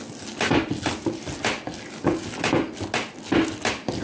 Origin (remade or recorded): recorded